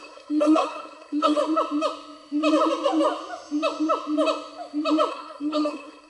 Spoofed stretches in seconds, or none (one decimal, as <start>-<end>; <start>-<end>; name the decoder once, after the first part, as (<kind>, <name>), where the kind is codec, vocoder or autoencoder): 0.0-1.4 (codec, SNAC); 5.1-6.1